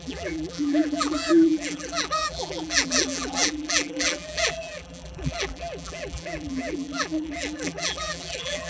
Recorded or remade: remade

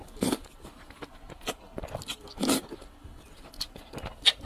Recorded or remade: recorded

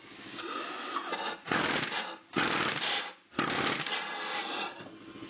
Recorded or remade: recorded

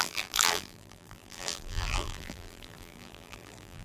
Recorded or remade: remade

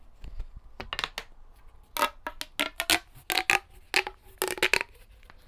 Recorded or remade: recorded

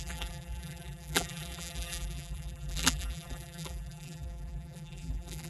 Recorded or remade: remade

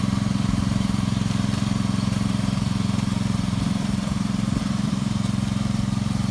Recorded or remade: remade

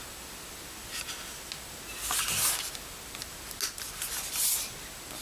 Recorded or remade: recorded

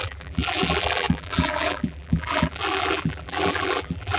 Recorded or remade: remade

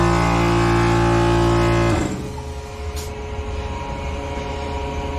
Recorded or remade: recorded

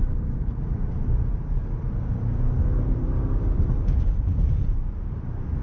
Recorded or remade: remade